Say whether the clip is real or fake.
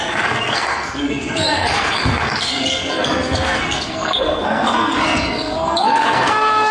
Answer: fake